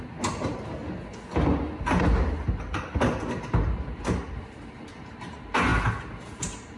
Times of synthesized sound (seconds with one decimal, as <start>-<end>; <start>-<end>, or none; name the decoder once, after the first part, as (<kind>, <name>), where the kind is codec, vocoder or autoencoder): none